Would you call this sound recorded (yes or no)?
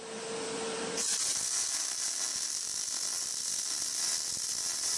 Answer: no